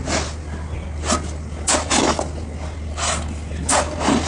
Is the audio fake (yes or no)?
no